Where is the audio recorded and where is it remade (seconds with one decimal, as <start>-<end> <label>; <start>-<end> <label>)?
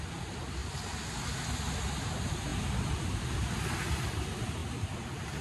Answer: 0.0-5.4 recorded